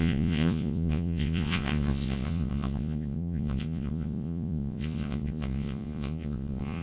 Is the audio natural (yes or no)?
no